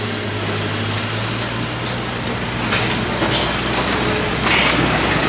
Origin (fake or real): real